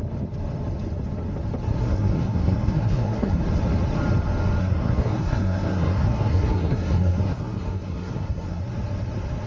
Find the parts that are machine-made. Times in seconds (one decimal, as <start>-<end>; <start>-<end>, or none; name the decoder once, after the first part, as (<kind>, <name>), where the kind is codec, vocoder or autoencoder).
1.8-3.4 (codec, SNAC); 4.6-8.6